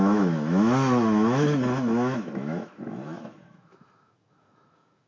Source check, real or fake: fake